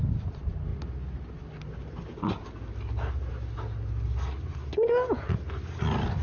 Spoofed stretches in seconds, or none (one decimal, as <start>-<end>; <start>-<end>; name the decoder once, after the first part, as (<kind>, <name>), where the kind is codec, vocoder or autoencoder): none